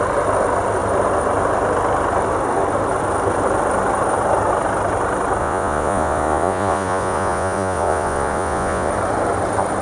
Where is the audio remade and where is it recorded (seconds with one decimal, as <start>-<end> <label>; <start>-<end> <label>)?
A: 0.0-5.4 recorded; 5.4-8.9 remade; 8.9-9.8 recorded